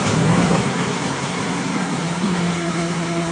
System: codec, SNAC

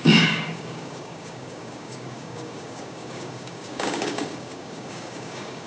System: codec, DAC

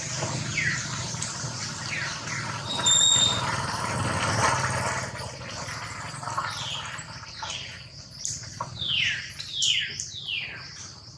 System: none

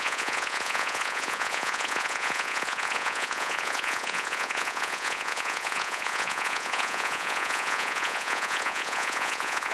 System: vocoder, Vocos